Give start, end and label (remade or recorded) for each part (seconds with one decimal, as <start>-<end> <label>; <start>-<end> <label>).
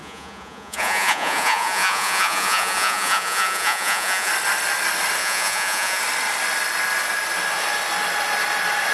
0.0-4.3 remade; 4.3-5.2 recorded; 5.2-6.0 remade; 6.0-8.9 recorded